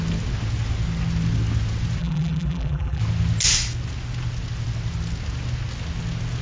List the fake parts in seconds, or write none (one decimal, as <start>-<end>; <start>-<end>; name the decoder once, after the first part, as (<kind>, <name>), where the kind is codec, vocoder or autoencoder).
2.0-3.0 (vocoder, BigVGAN v2)